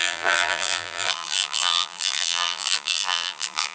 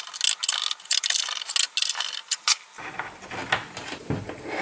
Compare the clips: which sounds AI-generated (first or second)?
first